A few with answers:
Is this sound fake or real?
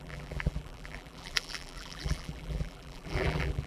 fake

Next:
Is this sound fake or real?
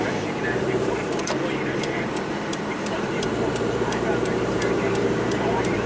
fake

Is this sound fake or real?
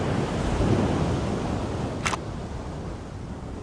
fake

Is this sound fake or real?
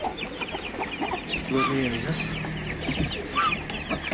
real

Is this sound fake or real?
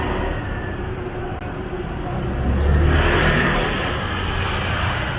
real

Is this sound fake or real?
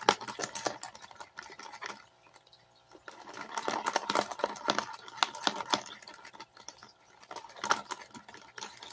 real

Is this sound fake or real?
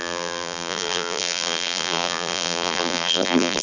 fake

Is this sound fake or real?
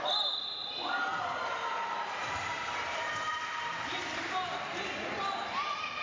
fake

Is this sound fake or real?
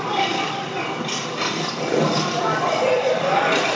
fake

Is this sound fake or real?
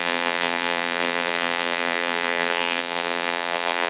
fake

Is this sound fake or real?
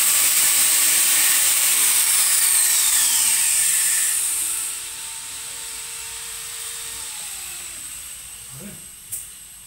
fake